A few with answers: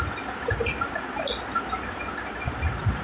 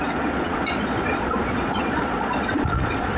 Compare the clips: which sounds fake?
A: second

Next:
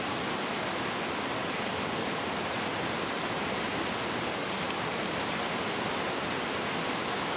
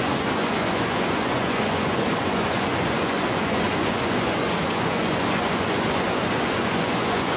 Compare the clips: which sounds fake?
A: second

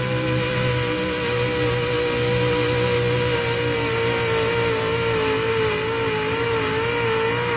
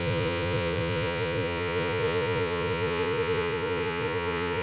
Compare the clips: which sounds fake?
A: second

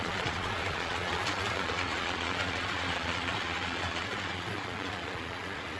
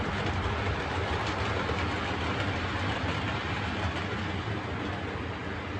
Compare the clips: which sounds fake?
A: first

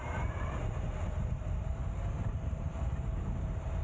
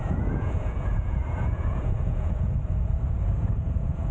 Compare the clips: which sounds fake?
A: second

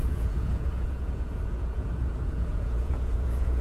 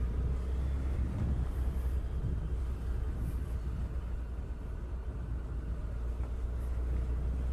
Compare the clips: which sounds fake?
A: first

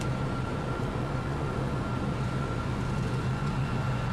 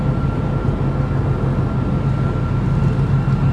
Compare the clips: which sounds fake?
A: first